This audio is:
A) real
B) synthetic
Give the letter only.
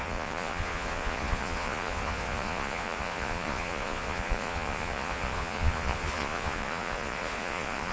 B